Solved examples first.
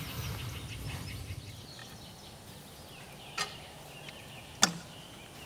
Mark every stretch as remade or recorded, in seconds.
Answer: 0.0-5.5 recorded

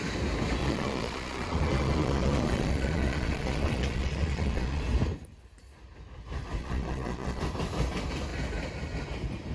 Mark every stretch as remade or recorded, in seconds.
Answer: 0.0-0.6 recorded; 0.6-4.8 remade; 4.8-6.6 recorded; 6.6-7.4 remade; 7.4-9.5 recorded

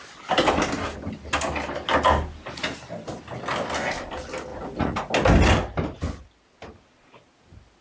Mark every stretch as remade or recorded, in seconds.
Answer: 0.0-4.5 recorded; 4.5-5.1 remade; 5.1-7.8 recorded

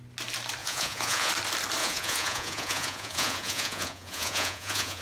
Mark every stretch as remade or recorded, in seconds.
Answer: 0.0-0.6 recorded; 0.6-1.3 remade; 1.3-1.8 recorded; 1.8-5.0 remade

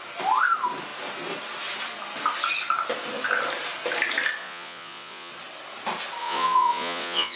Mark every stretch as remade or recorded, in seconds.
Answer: 0.0-4.4 recorded; 4.4-5.3 remade; 5.3-6.2 recorded; 6.2-7.4 remade

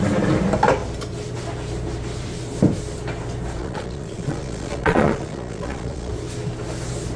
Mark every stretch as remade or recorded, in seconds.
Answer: 0.0-3.6 recorded; 3.6-6.1 remade; 6.1-7.2 recorded

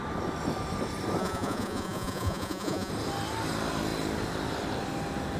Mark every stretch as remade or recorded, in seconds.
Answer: 0.0-1.2 recorded; 1.2-2.9 remade; 2.9-5.4 recorded

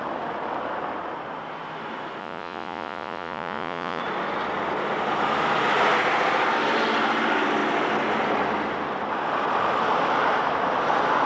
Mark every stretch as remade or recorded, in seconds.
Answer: 0.0-2.2 recorded; 2.2-4.0 remade; 4.0-11.3 recorded